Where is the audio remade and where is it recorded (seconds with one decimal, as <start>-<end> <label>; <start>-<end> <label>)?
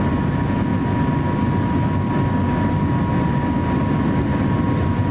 0.0-5.1 recorded